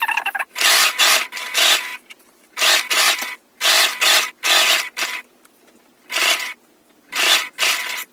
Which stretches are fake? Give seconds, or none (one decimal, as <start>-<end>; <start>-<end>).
none